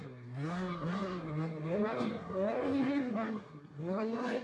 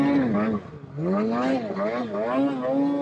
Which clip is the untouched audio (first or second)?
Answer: second